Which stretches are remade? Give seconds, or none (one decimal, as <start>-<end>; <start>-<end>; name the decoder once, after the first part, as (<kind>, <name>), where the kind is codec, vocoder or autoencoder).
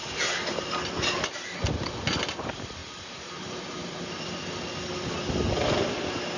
2.8-4.0 (vocoder, BigVGAN v2)